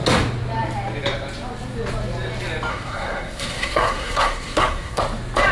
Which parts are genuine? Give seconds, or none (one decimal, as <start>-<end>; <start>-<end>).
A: 0.0-2.7; 5.0-5.5

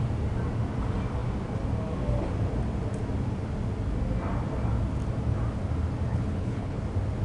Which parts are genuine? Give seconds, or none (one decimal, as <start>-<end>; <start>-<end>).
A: 0.0-6.1; 6.8-7.2

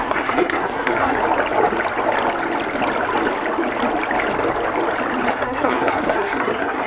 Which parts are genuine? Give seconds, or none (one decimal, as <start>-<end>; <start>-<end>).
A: 1.2-5.3

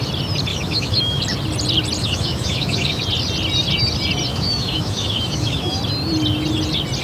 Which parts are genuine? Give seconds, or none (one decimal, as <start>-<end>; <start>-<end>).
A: 0.0-0.5; 1.2-2.0; 3.0-4.3; 5.8-7.0

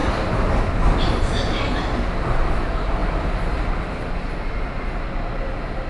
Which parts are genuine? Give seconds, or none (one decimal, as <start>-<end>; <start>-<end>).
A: 0.0-3.0; 4.3-5.9

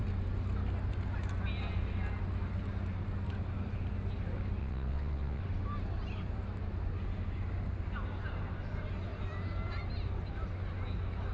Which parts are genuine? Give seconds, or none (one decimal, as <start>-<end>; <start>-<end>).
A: 0.0-4.6; 5.4-11.3